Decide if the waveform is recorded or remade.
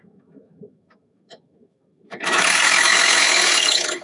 remade